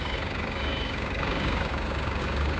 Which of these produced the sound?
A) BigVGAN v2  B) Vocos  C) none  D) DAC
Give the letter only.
D